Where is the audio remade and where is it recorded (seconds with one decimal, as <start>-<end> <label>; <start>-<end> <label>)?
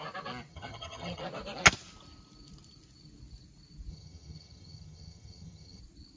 0.0-0.5 recorded; 0.5-1.2 remade; 1.2-3.9 recorded; 3.9-5.8 remade; 5.8-6.2 recorded